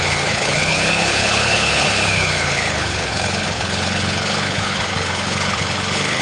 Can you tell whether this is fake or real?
fake